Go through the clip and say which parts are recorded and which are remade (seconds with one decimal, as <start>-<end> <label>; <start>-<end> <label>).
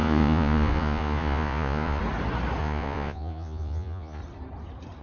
0.0-2.0 remade; 2.0-2.6 recorded; 2.6-4.2 remade; 4.2-5.0 recorded